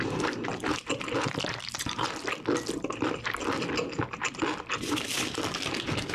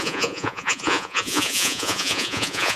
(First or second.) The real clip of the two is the first